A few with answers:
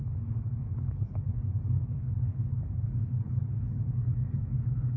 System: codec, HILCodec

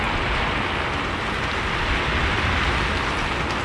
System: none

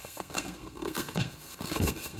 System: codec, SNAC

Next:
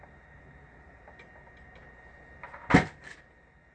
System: none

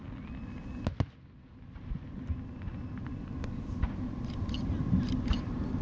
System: none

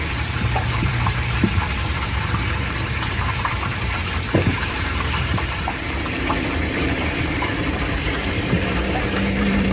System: vocoder, BigVGAN v2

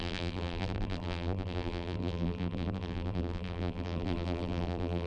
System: vocoder, BigVGAN v2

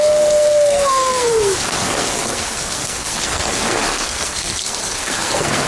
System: codec, SNAC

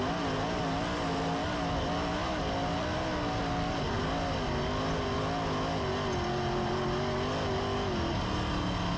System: none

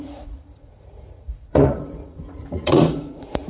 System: vocoder, Vocos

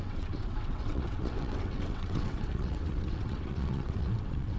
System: vocoder, WaveNeXt